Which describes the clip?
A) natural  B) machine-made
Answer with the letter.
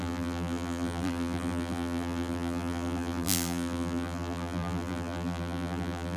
B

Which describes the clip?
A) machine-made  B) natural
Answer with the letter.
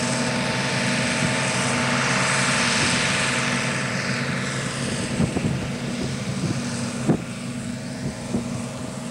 B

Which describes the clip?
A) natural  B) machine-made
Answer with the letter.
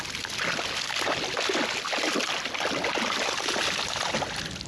A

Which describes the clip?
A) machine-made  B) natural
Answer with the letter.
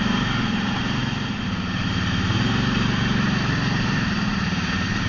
A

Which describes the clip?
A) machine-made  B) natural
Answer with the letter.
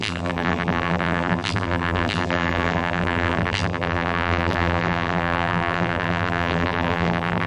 A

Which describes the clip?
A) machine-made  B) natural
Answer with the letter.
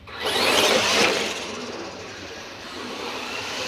A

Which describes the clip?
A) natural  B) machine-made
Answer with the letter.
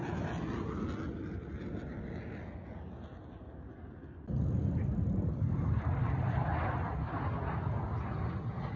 A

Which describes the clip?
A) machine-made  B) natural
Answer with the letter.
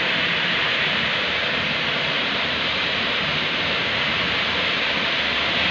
A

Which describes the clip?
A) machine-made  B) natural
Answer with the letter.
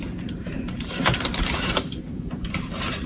A